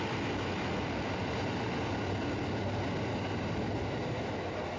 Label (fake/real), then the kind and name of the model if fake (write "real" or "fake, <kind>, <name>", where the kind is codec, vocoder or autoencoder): real